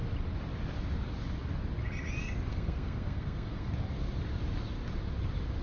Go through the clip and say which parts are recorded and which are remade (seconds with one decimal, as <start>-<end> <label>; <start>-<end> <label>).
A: 0.0-2.5 recorded; 2.5-3.7 remade; 3.7-5.6 recorded